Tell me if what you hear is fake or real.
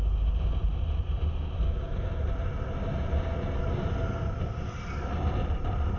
real